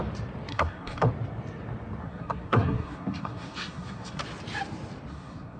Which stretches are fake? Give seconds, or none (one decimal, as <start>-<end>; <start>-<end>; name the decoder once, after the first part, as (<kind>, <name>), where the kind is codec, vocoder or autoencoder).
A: 0.5-1.1 (codec, SNAC); 2.0-4.2; 5.1-5.6